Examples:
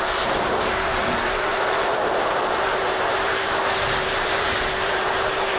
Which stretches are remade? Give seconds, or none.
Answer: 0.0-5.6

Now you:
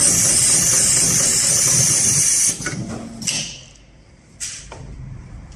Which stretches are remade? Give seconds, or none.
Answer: 1.2-5.6

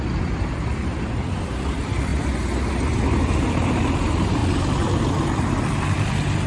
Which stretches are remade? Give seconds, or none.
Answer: 0.0-2.1; 3.5-6.5